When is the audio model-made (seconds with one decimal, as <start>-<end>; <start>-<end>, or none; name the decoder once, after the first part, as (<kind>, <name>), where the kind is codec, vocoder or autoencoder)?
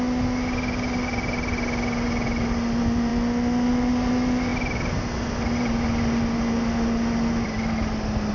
none